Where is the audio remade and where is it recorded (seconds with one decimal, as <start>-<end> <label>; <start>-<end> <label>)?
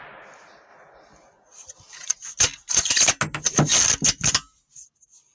0.0-3.7 recorded; 3.7-4.3 remade; 4.3-5.3 recorded